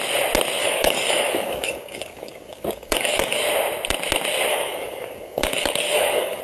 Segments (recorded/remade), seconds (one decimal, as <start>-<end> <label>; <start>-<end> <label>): 0.0-0.6 recorded; 0.6-3.4 remade; 3.4-4.5 recorded; 4.5-6.4 remade